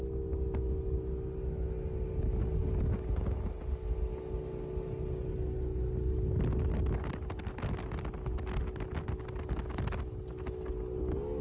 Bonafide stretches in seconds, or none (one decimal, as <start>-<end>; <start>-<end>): 0.0-11.4

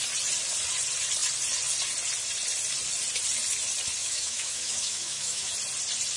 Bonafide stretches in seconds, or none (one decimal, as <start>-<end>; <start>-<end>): 0.0-4.0; 5.5-6.2

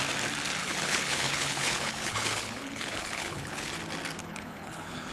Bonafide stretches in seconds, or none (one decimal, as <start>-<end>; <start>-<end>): 0.0-0.6; 3.7-4.2

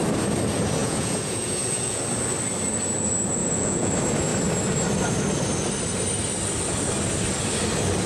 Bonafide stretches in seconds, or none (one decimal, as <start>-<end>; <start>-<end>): 0.0-0.8; 2.0-3.4; 3.9-8.1

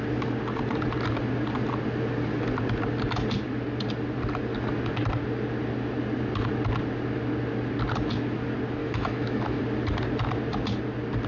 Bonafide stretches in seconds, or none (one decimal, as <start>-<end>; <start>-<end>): 0.0-8.8; 9.6-11.3

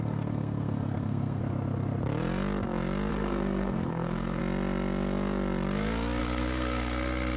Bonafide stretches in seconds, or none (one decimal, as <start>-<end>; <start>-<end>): 1.4-3.1; 4.4-6.2

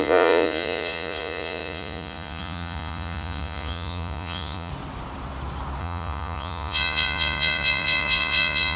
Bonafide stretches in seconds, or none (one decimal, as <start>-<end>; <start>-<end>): 4.7-5.8

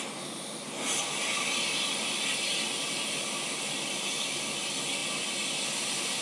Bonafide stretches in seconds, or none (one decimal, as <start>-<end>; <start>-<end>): 0.0-5.0